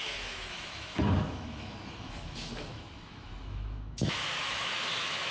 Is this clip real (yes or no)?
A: no